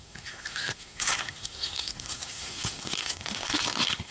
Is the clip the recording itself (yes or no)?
no